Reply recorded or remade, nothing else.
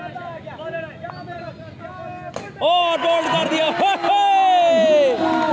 recorded